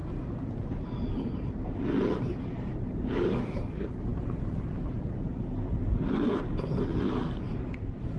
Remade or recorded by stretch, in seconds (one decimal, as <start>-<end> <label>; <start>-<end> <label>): 0.0-8.2 recorded